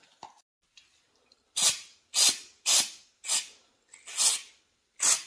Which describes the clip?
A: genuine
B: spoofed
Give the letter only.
A